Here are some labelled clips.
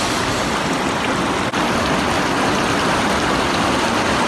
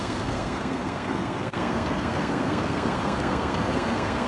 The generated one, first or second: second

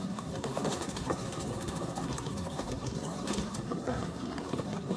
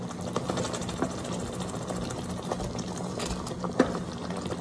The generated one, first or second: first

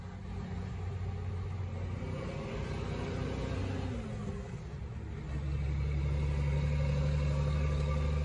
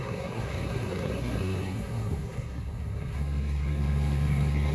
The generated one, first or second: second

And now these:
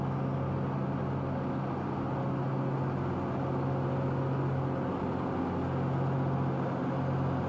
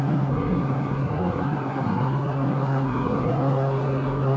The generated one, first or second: second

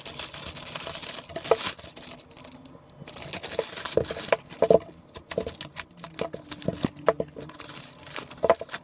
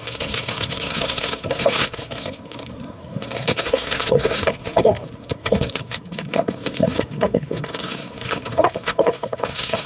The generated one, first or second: second